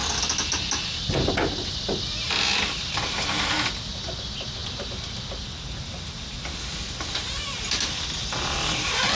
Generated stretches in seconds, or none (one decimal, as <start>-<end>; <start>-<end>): none